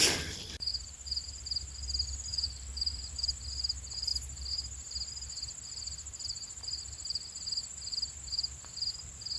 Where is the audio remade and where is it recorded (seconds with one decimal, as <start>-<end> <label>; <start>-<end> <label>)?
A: 0.0-0.7 recorded; 0.7-1.4 remade; 1.4-2.3 recorded; 2.3-3.4 remade; 3.4-9.4 recorded